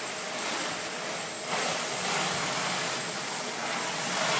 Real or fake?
real